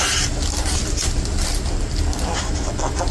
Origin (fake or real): real